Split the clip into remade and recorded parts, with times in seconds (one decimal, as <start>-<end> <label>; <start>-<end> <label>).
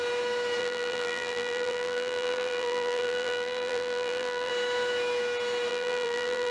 0.0-0.6 recorded; 0.6-4.5 remade; 4.5-5.7 recorded; 5.7-6.5 remade